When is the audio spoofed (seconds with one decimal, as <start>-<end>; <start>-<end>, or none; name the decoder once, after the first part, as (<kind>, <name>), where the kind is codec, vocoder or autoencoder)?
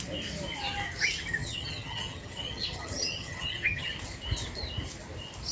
1.4-3.9 (vocoder, HiFi-GAN)